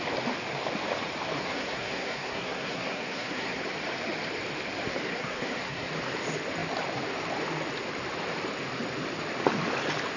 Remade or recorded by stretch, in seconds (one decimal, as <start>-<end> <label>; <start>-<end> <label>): 0.0-1.4 recorded; 1.4-3.6 remade; 3.6-5.1 recorded; 5.1-5.9 remade; 5.9-10.2 recorded